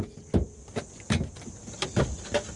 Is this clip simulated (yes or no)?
yes